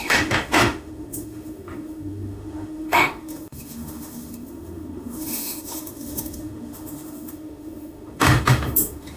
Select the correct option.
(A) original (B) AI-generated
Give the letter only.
B